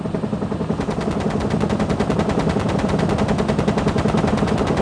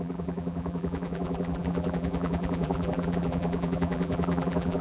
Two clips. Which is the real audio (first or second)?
first